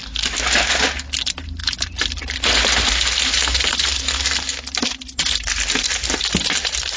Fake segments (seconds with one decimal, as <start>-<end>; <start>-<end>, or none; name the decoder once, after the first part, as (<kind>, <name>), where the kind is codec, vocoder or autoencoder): 1.2-1.6 (vocoder, BigVGAN v2); 5.8-7.0